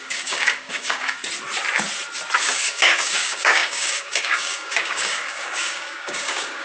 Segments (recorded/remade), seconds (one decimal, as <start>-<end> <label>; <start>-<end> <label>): 0.0-1.2 remade; 1.2-2.4 recorded; 2.4-6.6 remade